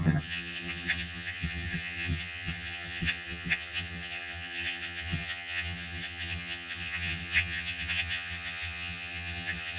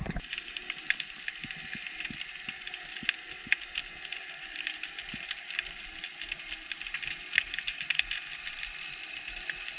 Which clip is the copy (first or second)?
first